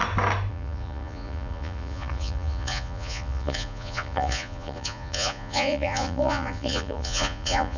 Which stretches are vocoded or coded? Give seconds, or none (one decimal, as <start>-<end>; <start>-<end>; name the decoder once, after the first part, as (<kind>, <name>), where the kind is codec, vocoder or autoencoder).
0.5-7.8 (vocoder, Vocos)